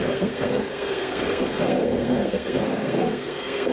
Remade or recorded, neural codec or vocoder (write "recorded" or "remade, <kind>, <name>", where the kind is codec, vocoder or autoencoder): remade, codec, SNAC